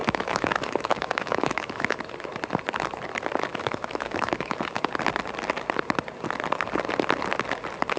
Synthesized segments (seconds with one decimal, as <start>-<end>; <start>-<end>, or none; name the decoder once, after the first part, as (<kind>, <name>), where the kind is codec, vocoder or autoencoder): 0.0-2.0 (autoencoder, DAC-VAE); 3.5-4.9